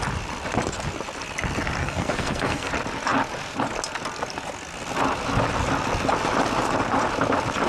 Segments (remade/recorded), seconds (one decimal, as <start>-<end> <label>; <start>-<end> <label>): 0.0-1.8 recorded; 1.8-2.7 remade; 2.7-7.7 recorded